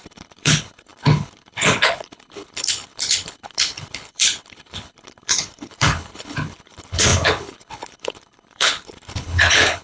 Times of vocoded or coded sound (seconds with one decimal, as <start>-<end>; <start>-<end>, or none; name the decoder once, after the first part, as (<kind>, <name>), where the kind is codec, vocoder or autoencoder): 0.0-9.8 (codec, HILCodec)